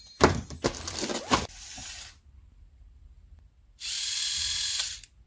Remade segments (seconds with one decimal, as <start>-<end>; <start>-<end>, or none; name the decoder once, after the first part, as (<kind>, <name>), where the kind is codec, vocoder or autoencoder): 0.0-1.8 (vocoder, BigVGAN v2)